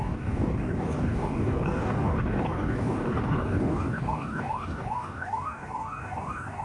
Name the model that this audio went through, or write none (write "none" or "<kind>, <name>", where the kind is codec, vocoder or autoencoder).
codec, DAC